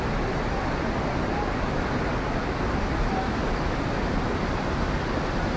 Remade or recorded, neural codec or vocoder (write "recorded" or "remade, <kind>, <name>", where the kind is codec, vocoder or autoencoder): recorded